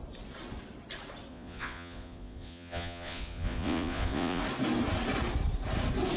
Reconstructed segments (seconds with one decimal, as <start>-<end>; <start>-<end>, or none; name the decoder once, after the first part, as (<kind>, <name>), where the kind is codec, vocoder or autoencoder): 1.3-4.4 (vocoder, Vocos)